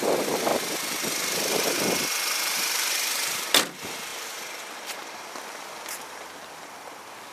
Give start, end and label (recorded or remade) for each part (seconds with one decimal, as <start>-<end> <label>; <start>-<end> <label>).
0.0-7.3 recorded